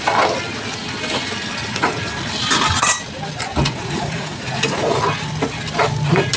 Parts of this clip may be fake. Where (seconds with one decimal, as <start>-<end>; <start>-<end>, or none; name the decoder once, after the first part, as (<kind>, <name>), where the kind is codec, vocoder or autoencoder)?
1.6-2.1 (vocoder, Vocos); 3.5-5.0

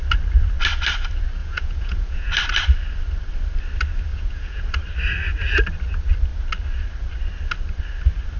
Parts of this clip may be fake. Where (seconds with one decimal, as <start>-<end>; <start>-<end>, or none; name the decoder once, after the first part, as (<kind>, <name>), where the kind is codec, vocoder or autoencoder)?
1.4-2.3 (vocoder, Vocos); 4.1-4.6

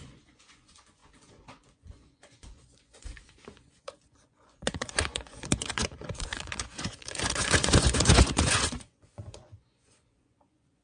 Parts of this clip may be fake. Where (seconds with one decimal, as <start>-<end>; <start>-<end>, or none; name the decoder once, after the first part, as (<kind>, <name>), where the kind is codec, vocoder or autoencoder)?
0.0-10.8 (vocoder, Vocos)